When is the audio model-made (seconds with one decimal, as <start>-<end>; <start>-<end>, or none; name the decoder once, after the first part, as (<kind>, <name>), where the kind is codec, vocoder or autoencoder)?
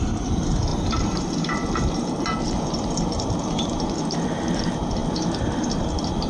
0.7-3.8 (vocoder, BigVGAN v2)